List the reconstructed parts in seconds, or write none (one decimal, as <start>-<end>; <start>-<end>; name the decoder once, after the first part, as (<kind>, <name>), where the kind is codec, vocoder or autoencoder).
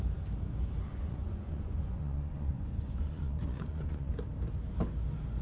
0.9-4.1 (vocoder, Vocos)